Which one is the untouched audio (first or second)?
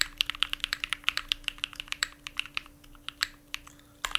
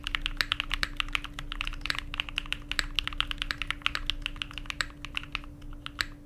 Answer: second